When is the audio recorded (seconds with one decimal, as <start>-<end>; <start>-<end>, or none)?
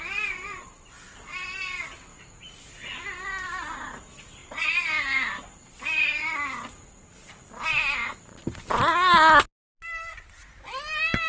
0.0-8.0; 8.6-11.3